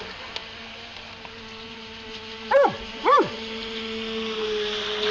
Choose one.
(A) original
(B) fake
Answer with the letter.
A